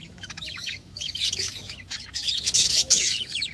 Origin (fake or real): fake